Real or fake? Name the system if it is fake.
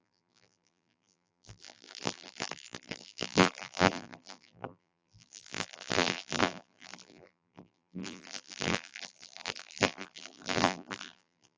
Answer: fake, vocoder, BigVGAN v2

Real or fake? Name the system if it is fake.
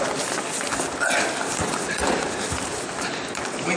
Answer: real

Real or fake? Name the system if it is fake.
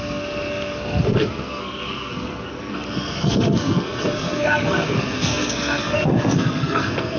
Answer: fake, codec, SNAC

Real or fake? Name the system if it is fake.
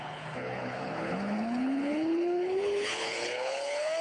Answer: fake, codec, HILCodec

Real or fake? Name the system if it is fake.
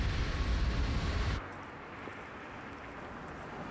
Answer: real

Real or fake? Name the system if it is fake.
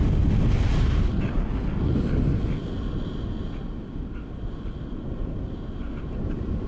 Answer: real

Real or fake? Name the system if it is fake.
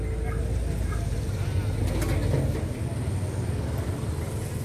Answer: real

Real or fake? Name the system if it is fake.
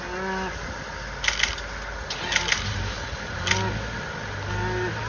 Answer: real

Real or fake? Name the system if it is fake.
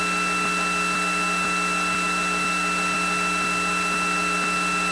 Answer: real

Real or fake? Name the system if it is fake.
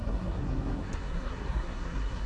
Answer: fake, codec, SNAC